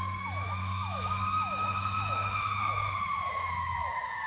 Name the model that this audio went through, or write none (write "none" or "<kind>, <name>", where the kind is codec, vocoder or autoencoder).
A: autoencoder, DAC-VAE